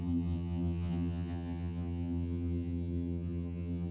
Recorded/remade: remade